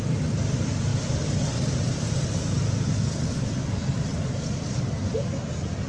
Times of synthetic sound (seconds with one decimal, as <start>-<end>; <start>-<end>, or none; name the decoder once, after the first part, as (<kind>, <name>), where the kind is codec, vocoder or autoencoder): 0.9-2.1 (vocoder, BigVGAN v2); 4.1-4.8